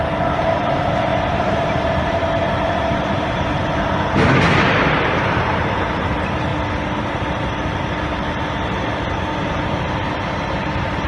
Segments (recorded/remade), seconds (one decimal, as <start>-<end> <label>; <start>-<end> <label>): 0.0-6.5 remade; 6.5-7.8 recorded; 7.8-11.1 remade